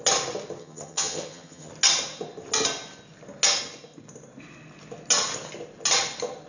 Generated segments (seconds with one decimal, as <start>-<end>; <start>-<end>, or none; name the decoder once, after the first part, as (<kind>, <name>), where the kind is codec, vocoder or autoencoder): 0.6-1.7 (vocoder, HiFi-GAN)